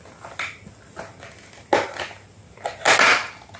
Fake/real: real